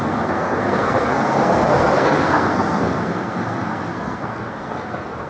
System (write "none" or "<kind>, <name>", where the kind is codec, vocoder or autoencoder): codec, SNAC